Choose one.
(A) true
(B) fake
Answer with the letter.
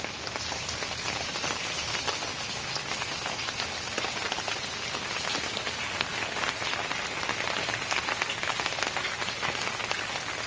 A